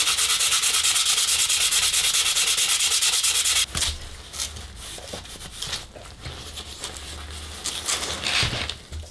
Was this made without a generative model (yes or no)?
yes